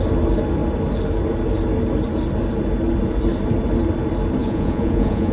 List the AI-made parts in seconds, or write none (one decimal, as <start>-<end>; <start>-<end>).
4.4-5.3